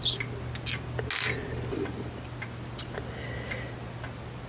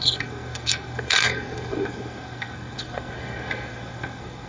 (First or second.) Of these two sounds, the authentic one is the first